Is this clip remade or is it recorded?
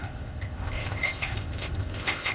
remade